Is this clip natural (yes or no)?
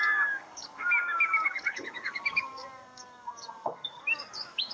no